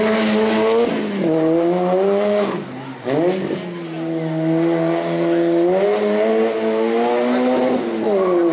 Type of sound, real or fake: real